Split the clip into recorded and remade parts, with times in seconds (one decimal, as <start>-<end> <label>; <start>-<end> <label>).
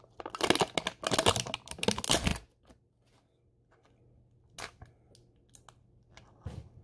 0.0-6.8 recorded